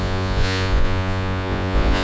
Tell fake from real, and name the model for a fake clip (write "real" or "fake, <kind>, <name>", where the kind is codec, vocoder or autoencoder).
fake, vocoder, Vocos